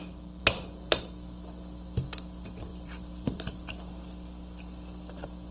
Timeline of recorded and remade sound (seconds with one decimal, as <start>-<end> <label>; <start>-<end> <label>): 0.0-2.7 recorded; 2.7-3.5 remade; 3.5-5.5 recorded